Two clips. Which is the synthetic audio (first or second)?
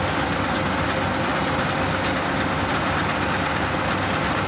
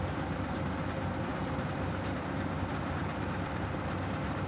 second